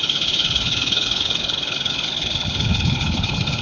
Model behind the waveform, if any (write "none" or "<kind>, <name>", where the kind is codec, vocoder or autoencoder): codec, HILCodec